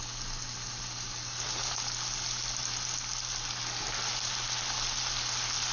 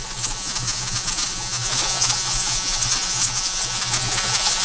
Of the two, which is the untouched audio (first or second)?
first